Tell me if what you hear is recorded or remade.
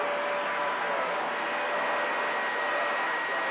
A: recorded